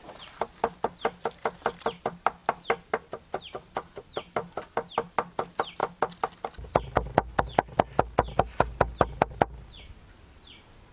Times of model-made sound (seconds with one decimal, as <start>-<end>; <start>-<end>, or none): none